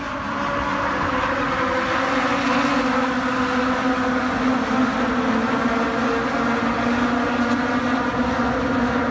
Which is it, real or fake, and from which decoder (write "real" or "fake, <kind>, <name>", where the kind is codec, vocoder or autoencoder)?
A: real